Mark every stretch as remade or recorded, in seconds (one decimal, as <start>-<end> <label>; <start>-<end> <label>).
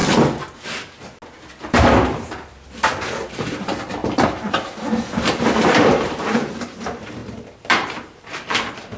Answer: 0.0-3.1 recorded; 3.1-9.0 remade